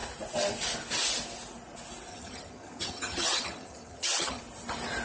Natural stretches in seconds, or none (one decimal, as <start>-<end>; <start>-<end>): 0.0-2.1; 4.4-5.0